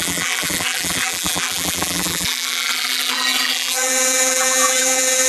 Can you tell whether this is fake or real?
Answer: fake